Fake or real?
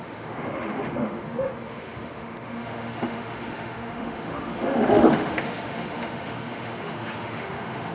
fake